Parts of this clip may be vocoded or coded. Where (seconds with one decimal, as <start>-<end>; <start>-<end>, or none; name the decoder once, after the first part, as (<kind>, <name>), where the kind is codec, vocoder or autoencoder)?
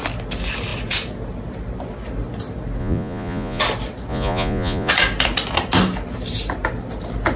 2.8-3.6 (vocoder, Vocos); 4.1-4.9